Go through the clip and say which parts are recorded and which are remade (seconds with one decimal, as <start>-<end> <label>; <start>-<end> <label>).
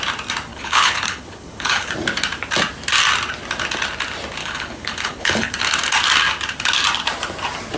0.0-0.5 recorded; 0.5-1.9 remade; 1.9-4.4 recorded; 4.4-5.5 remade; 5.5-7.8 recorded